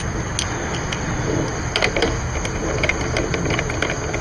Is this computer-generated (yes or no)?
no